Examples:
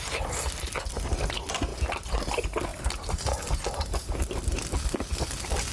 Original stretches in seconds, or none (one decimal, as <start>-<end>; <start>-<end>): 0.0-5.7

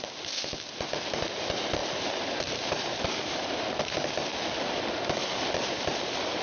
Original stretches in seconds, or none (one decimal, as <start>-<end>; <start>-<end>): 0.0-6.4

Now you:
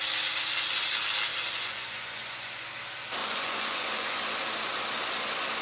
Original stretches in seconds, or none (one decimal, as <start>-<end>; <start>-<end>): 0.0-1.3; 2.7-3.2; 4.2-5.6